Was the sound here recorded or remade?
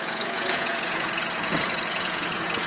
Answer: remade